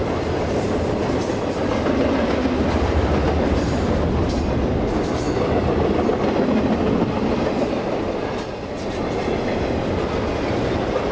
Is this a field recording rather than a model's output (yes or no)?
yes